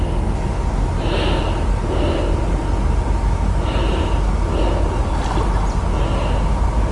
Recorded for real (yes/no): yes